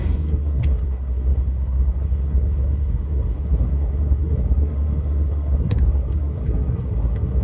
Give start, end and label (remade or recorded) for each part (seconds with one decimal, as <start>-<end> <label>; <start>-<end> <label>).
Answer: 0.0-7.4 remade